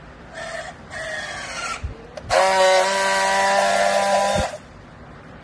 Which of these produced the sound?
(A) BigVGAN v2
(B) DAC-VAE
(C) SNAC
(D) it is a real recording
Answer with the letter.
D